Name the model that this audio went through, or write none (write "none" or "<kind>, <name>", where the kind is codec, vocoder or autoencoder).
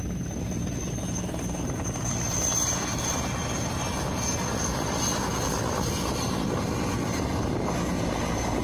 none